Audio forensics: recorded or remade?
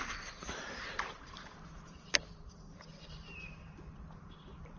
remade